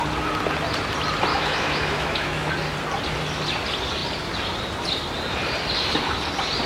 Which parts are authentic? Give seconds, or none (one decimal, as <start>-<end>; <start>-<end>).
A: 0.0-1.3; 2.5-6.7